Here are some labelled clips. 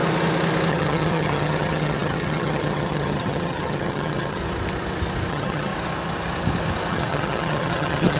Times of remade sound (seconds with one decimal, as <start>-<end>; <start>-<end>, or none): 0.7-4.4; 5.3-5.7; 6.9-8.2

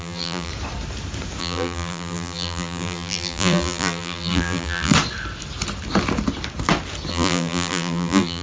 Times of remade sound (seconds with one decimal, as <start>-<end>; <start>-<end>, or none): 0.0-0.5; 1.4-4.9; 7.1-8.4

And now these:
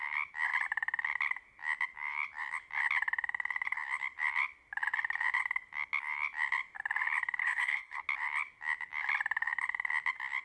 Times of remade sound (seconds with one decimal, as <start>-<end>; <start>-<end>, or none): 7.4-8.0

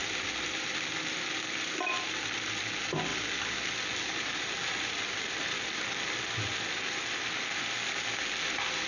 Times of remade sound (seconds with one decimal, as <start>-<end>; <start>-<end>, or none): 0.0-0.8; 3.1-6.1

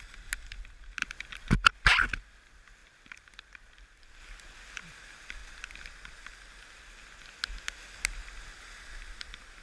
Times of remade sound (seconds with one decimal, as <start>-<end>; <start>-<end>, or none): 1.0-1.5; 2.8-4.9